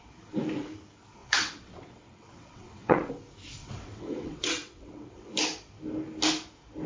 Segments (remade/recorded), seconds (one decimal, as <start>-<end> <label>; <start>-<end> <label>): 0.0-1.2 recorded; 1.2-3.1 remade; 3.1-3.6 recorded; 3.6-5.3 remade; 5.3-6.9 recorded